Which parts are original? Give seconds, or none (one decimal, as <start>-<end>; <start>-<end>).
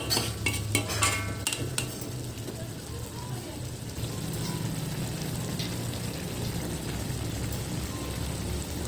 0.0-8.9